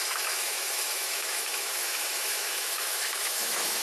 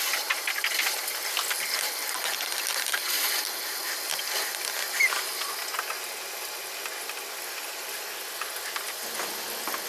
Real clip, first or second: second